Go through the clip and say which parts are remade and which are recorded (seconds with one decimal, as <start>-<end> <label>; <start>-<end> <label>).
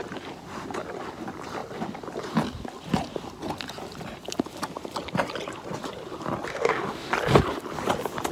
0.0-6.5 recorded; 6.5-7.1 remade; 7.1-8.3 recorded